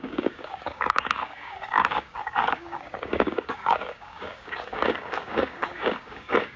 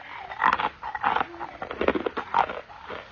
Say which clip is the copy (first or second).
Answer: first